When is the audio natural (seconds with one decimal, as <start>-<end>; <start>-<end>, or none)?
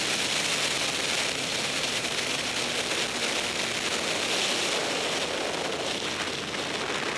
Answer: 0.0-1.5; 2.5-7.2